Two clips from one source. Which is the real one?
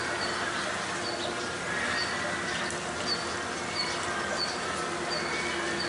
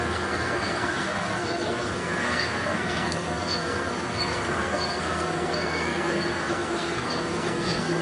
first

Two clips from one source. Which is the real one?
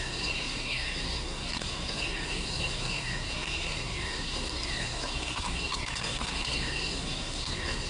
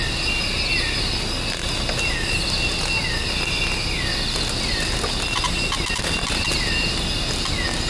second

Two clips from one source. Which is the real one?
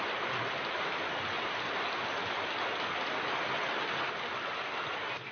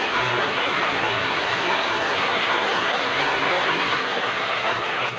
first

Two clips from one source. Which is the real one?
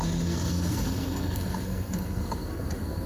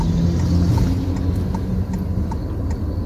second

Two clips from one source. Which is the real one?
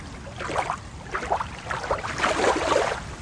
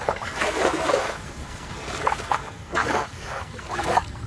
first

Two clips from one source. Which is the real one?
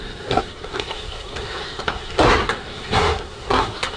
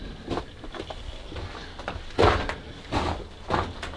second